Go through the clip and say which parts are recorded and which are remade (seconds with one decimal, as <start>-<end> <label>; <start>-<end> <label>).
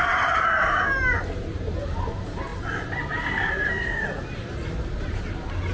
0.0-5.7 recorded